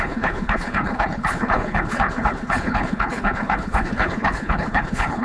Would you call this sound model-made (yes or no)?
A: yes